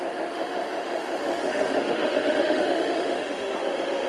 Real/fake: fake